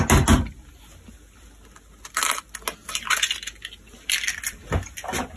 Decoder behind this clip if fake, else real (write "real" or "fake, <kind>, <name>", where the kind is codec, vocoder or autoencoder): real